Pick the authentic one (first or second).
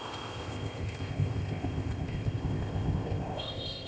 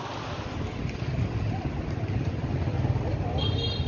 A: second